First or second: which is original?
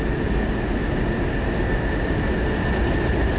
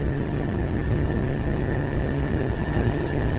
first